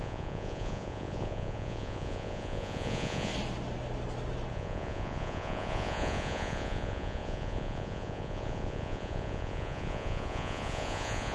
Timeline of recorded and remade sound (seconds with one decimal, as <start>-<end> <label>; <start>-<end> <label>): 0.0-3.3 remade; 3.3-4.5 recorded; 4.5-11.3 remade

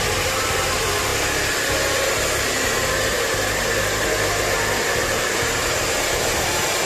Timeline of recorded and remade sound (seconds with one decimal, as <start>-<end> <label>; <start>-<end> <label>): 0.0-1.1 remade; 1.1-4.9 recorded; 4.9-6.9 remade

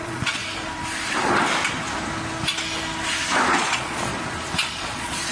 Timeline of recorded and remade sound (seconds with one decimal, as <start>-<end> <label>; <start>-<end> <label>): 0.0-0.4 remade; 0.4-3.5 recorded; 3.5-4.1 remade; 4.1-4.8 recorded; 4.8-5.3 remade

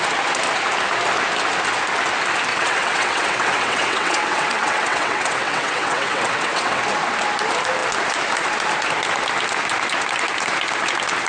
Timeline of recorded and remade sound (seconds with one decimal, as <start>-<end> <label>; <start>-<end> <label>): 0.0-2.5 recorded; 2.5-6.8 remade; 6.8-11.3 recorded

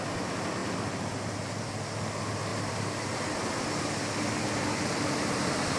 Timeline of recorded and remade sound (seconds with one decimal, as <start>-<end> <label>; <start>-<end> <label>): 0.0-2.5 recorded; 2.5-3.4 remade; 3.4-5.8 recorded